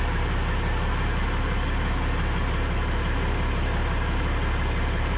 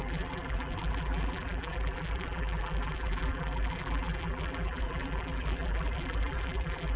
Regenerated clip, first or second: second